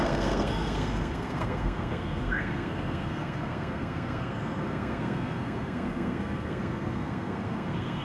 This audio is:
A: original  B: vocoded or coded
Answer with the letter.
B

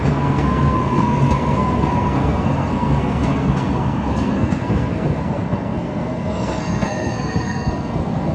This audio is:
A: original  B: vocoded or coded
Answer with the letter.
B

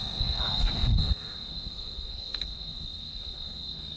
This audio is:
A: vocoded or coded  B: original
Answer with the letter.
A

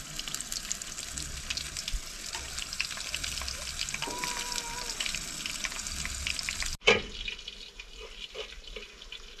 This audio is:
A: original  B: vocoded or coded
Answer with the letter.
A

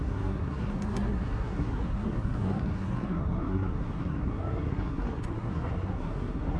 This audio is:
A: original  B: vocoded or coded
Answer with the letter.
B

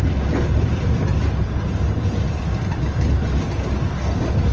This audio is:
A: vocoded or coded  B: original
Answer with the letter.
B